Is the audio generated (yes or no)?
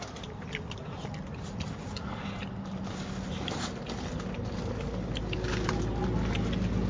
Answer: no